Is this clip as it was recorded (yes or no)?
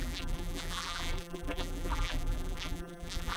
no